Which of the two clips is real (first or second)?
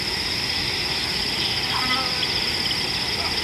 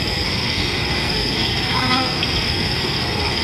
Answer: first